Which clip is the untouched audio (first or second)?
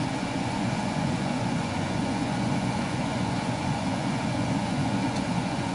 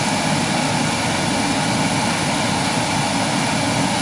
second